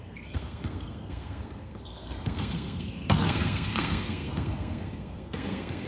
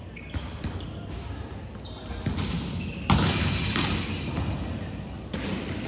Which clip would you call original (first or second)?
second